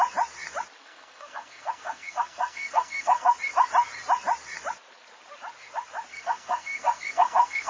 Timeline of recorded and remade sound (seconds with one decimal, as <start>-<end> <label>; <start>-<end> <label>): 0.0-0.8 recorded; 0.8-3.3 remade; 3.3-6.1 recorded; 6.1-7.7 remade